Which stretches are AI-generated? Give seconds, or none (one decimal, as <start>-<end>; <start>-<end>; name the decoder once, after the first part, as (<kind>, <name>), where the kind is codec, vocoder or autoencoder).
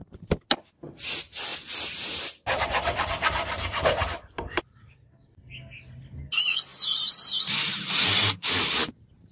none